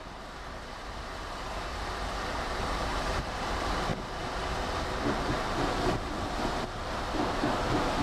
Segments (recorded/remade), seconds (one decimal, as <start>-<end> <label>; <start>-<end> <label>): 0.0-1.1 remade; 1.1-2.3 recorded; 2.3-3.9 remade; 3.9-6.5 recorded; 6.5-8.0 remade